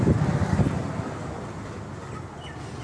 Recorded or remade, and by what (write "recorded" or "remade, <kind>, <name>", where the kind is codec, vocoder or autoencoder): recorded